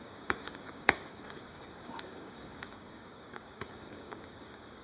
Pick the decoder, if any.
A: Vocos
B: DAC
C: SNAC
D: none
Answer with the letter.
B